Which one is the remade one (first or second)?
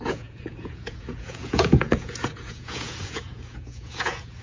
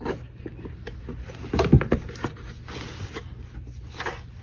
first